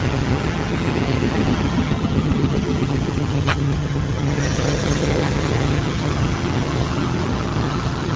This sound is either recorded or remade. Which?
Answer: remade